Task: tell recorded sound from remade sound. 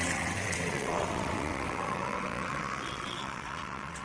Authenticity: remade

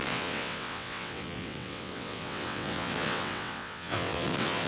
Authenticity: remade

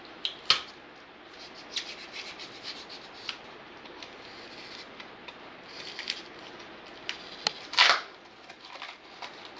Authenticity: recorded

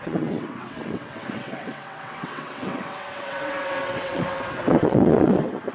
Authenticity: remade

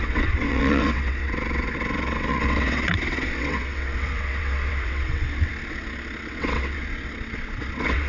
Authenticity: remade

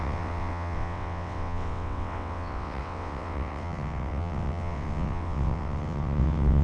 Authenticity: remade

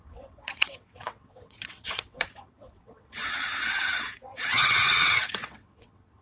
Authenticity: remade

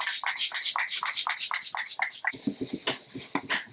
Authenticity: recorded